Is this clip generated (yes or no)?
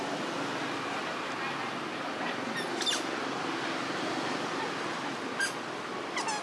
no